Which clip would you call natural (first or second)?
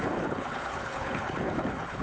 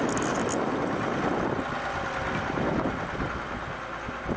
second